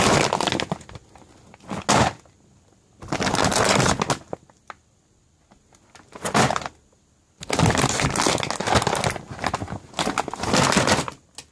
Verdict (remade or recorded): recorded